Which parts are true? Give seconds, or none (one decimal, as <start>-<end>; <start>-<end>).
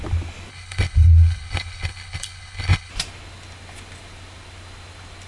0.0-0.5; 2.9-5.3